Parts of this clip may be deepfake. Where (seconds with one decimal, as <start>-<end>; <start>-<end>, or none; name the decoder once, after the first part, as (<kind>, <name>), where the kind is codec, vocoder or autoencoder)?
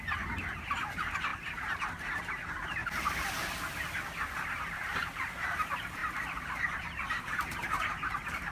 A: 0.0-2.8 (vocoder, BigVGAN v2); 4.3-6.0; 6.6-8.5